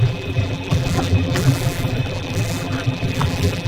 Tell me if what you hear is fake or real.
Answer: fake